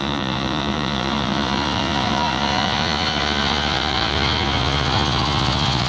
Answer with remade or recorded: remade